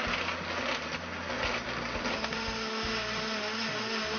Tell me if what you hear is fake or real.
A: real